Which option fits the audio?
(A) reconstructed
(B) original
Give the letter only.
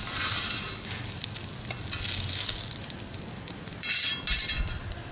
B